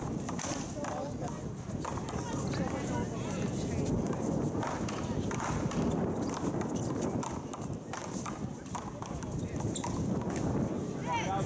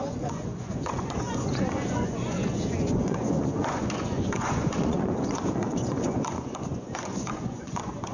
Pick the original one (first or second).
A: first